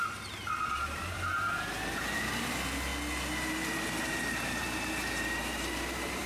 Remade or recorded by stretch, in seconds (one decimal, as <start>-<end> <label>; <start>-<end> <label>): 0.0-2.9 remade; 2.9-4.0 recorded; 4.0-6.3 remade